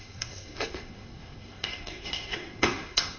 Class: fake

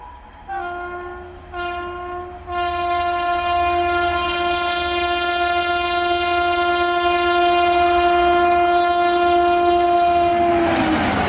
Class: real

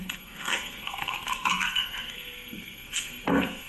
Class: fake